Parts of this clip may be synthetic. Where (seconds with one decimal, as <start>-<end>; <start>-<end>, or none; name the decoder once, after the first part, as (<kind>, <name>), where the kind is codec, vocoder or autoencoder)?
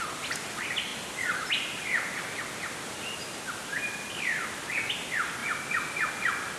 none